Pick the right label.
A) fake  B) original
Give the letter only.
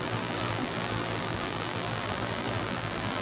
A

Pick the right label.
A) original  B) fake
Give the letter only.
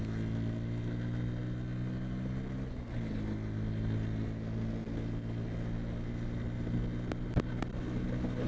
A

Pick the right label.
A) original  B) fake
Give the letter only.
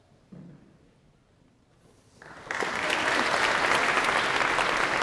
A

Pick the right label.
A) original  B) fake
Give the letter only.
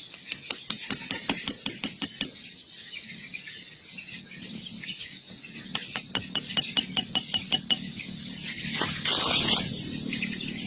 A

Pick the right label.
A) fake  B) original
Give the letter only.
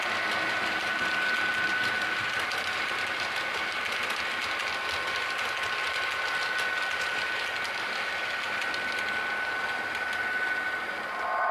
B